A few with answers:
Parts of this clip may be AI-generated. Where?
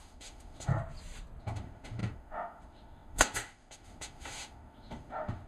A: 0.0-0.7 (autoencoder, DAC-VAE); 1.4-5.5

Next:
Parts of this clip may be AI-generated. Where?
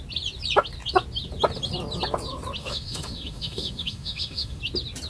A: 2.6-4.6 (autoencoder, DAC-VAE)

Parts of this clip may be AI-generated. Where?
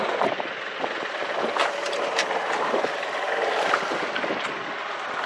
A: none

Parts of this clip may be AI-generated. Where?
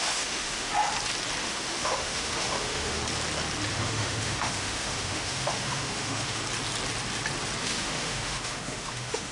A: 0.0-0.7 (autoencoder, DAC-VAE); 1.4-3.0; 3.7-6.4; 7.6-9.3